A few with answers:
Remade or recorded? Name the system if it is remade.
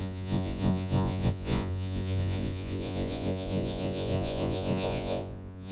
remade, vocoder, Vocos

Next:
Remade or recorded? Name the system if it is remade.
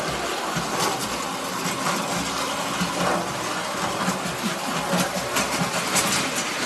recorded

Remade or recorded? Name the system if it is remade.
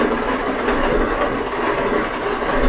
recorded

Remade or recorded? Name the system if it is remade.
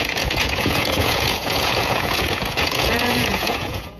remade, vocoder, Vocos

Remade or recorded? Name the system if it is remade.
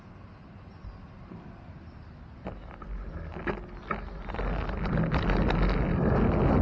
recorded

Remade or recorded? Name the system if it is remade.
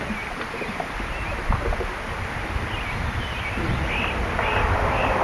recorded